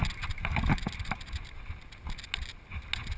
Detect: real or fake real